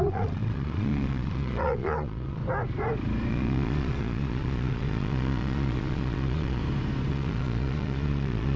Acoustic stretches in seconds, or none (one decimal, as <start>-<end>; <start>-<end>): 2.4-3.3; 6.6-7.1